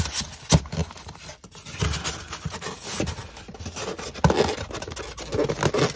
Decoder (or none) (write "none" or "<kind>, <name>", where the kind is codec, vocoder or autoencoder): none